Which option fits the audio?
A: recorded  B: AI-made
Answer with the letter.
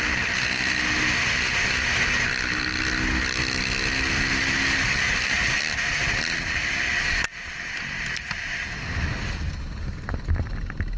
A